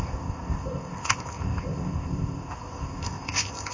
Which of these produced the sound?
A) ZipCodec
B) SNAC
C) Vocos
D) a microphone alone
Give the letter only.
A